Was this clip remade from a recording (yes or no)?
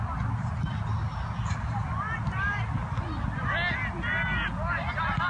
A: no